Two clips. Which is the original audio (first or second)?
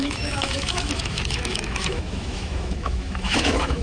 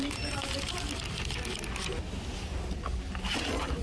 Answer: second